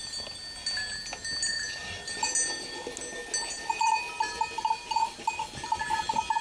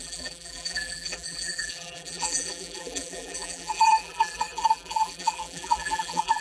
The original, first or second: first